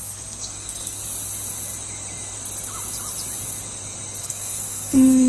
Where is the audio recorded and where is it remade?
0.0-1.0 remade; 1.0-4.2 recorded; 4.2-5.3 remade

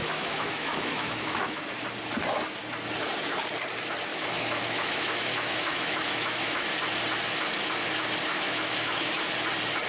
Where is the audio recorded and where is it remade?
0.0-1.6 remade; 1.6-4.1 recorded; 4.1-6.7 remade; 6.7-8.3 recorded; 8.3-9.2 remade; 9.2-9.9 recorded